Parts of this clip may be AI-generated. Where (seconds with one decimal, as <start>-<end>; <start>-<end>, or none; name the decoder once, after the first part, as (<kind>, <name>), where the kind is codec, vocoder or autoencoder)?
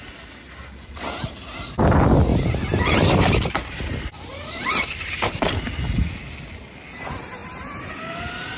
2.3-3.8 (vocoder, BigVGAN v2); 4.3-5.5; 7.4-8.6